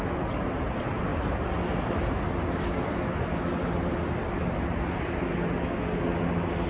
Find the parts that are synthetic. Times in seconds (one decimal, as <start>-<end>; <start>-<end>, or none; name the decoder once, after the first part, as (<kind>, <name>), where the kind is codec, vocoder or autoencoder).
none